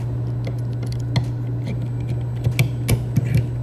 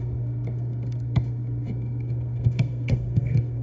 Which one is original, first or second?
first